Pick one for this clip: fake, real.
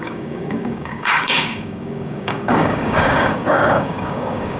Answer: fake